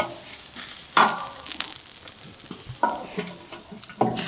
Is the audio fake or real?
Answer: real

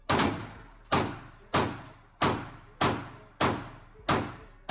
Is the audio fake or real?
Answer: real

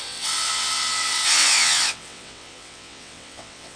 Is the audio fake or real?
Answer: fake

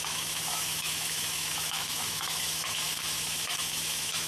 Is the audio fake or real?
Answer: fake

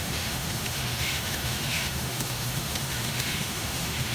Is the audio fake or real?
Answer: fake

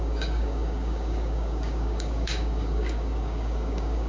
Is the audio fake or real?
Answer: fake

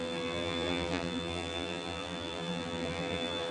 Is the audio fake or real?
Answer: fake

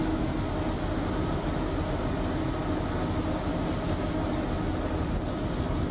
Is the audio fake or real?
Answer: real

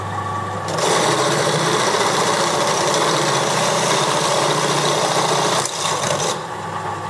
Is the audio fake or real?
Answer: real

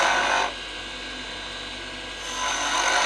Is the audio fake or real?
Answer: real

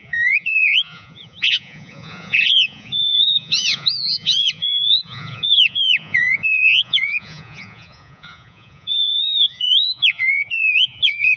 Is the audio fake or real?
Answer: fake